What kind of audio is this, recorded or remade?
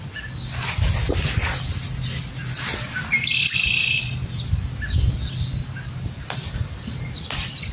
recorded